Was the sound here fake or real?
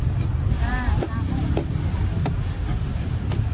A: real